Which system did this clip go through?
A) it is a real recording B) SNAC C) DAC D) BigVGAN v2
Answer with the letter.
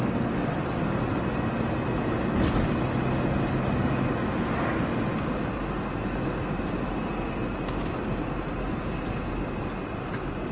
A